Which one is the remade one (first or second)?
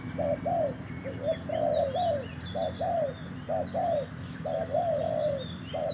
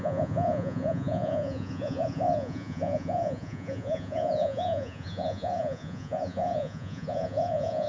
second